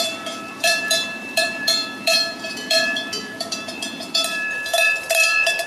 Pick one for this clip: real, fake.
fake